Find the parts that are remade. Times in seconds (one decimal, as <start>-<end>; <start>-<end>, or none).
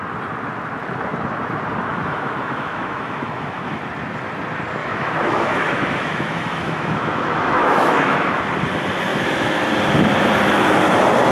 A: 1.9-3.8; 4.8-8.4; 9.1-9.6